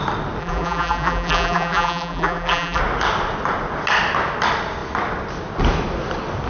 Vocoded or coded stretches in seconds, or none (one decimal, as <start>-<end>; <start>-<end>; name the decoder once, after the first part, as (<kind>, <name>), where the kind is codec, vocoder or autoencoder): 0.4-2.8 (vocoder, BigVGAN v2)

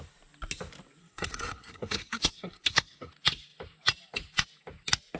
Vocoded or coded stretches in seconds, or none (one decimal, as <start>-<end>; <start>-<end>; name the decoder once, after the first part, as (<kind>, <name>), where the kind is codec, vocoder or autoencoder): 1.0-3.1 (codec, SNAC)

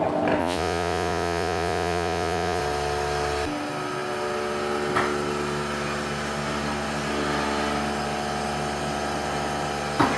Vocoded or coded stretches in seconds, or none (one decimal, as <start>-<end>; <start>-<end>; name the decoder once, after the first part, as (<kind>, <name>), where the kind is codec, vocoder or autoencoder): 0.4-2.6 (vocoder, Vocos)